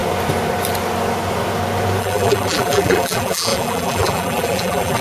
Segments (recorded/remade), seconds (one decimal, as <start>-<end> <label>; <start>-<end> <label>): 0.0-2.0 recorded; 2.0-5.0 remade